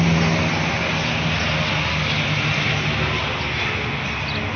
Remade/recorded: recorded